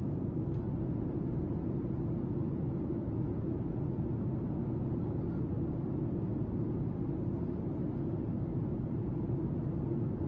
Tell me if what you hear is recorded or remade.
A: recorded